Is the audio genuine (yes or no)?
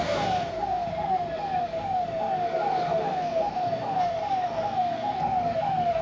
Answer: no